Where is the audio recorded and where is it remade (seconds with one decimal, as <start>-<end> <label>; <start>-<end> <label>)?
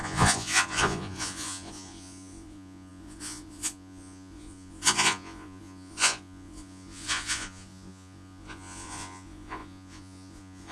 0.0-10.7 remade